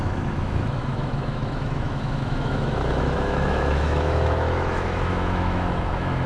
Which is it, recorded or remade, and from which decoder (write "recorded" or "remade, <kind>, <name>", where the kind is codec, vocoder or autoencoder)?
remade, autoencoder, DAC-VAE